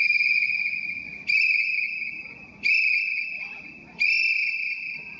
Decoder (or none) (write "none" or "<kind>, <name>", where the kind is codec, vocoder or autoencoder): none